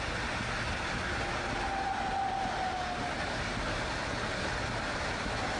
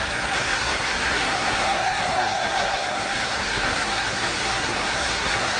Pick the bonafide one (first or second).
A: first